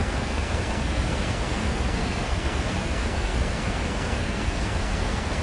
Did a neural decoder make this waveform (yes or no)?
yes